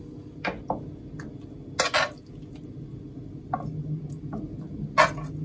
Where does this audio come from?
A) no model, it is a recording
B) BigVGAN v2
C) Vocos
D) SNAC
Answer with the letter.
A